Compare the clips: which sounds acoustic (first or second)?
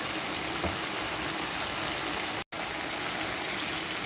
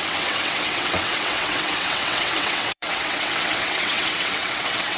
first